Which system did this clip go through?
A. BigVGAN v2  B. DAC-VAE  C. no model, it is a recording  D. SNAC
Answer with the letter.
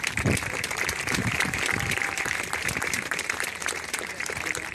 A